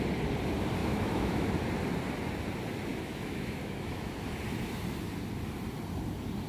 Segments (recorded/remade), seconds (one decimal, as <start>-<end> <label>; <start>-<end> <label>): 0.0-0.8 recorded; 0.8-1.5 remade; 1.5-2.9 recorded; 2.9-4.1 remade; 4.1-6.5 recorded